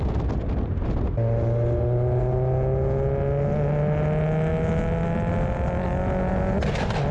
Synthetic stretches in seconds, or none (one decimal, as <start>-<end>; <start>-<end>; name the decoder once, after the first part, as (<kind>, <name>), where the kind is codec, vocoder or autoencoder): none